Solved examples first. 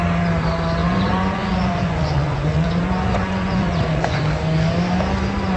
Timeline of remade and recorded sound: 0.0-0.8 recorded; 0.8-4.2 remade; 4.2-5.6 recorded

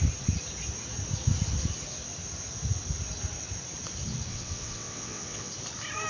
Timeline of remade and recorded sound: 0.0-4.3 recorded; 4.3-5.5 remade; 5.5-6.1 recorded

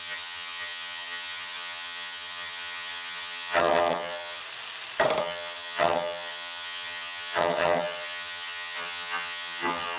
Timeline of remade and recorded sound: 0.0-4.4 remade; 4.4-5.2 recorded; 5.2-10.0 remade

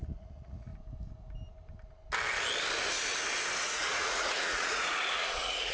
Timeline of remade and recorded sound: 0.0-0.7 remade; 0.7-3.6 recorded; 3.6-5.7 remade